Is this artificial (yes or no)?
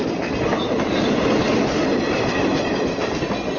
no